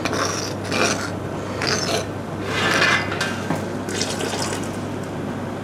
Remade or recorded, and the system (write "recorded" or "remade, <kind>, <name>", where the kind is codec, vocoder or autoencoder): recorded